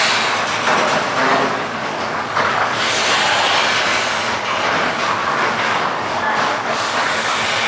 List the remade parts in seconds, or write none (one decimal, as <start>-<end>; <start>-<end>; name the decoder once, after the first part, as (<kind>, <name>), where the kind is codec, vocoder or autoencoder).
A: 1.2-3.0 (codec, DAC); 5.2-7.1